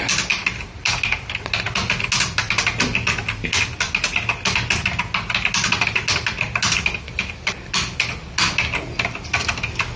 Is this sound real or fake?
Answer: real